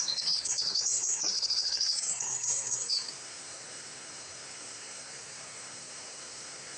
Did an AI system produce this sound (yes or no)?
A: yes